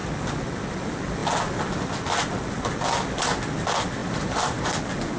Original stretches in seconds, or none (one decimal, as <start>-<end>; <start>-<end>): 0.0-4.0; 4.7-5.2

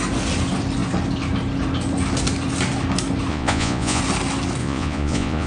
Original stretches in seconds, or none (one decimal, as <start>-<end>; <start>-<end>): 0.0-3.3; 4.0-4.6

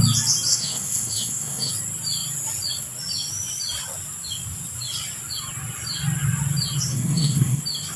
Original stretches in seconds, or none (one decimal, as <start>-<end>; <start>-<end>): 0.0-0.5; 1.7-6.9; 7.6-8.0

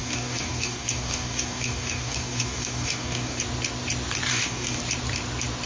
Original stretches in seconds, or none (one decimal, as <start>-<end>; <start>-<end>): 3.4-4.3; 4.8-5.7

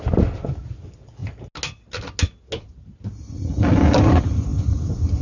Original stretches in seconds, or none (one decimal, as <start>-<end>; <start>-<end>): 0.0-5.2

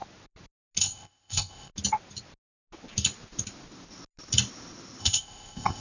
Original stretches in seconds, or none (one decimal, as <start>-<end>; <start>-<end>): 0.0-0.8; 1.7-5.0

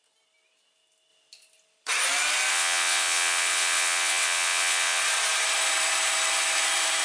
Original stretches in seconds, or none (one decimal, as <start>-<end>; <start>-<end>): 0.0-2.5; 5.0-7.0

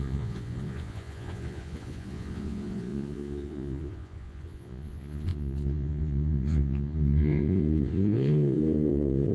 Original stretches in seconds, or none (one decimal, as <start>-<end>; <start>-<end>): none